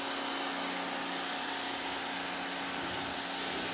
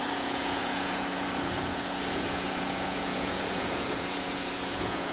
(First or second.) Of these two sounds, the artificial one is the second